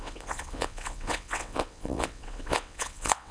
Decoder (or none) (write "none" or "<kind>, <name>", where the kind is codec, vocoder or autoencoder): vocoder, WaveNeXt